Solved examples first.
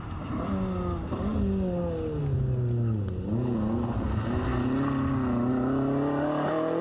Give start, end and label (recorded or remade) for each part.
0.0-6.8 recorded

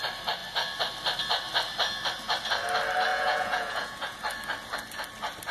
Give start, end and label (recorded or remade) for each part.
0.0-3.1 recorded; 3.1-4.2 remade; 4.2-5.5 recorded